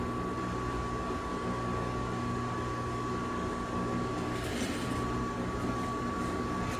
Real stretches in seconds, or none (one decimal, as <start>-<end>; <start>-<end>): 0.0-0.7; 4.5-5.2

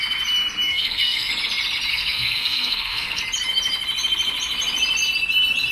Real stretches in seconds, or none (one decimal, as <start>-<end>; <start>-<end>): 0.0-0.7; 1.3-1.9; 3.2-5.7

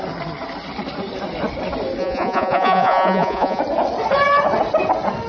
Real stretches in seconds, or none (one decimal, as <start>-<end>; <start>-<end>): 0.0-2.0; 3.6-5.3

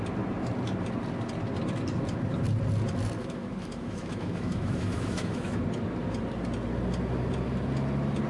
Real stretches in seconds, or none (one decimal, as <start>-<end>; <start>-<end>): 0.0-3.2; 5.6-8.3

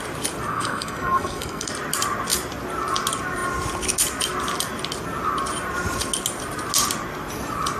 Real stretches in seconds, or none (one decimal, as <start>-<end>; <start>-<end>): 0.0-0.5; 1.7-7.8

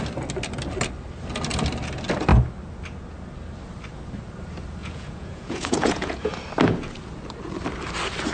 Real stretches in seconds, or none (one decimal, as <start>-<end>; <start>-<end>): 0.0-4.8; 6.3-8.3

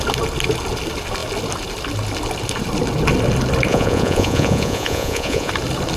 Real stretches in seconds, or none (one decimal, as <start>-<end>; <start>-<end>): 0.0-3.7; 5.5-6.0

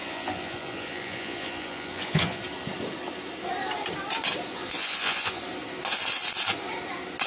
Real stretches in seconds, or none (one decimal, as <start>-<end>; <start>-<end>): 2.4-4.5; 5.4-7.3